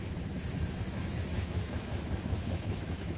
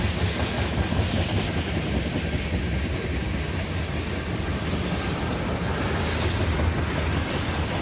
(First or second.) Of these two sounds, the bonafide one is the second